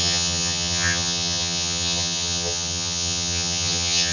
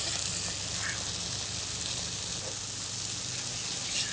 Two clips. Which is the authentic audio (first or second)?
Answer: second